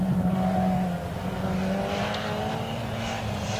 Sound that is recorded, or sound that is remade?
recorded